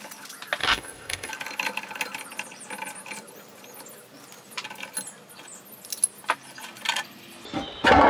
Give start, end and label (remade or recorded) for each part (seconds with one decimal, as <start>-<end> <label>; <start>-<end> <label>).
0.0-0.6 recorded; 0.6-1.3 remade; 1.3-8.1 recorded

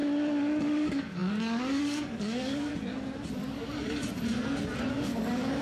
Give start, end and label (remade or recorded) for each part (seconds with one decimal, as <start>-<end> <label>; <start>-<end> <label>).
0.0-0.6 recorded; 0.6-2.7 remade; 2.7-3.4 recorded; 3.4-4.0 remade; 4.0-4.9 recorded; 4.9-5.6 remade

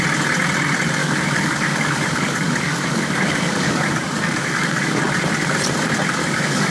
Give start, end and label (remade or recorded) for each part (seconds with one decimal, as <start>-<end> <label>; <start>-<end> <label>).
0.0-1.0 recorded; 1.0-5.0 remade; 5.0-6.2 recorded; 6.2-6.7 remade